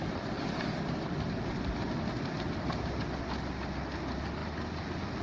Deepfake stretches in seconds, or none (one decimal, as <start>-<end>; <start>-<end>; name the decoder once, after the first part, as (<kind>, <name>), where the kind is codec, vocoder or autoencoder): none